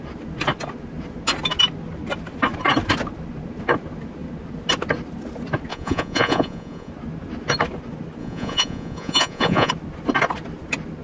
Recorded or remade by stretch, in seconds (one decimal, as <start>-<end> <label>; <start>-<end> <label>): 0.0-5.7 recorded; 5.7-6.9 remade; 6.9-8.2 recorded; 8.2-9.7 remade; 9.7-11.0 recorded